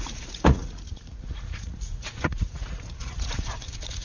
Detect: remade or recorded remade